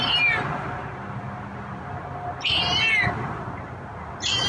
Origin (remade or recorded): recorded